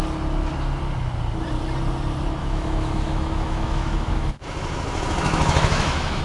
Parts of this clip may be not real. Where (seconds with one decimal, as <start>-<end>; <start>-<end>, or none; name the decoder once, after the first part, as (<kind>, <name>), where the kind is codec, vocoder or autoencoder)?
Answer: 2.4-6.2 (autoencoder, DAC-VAE)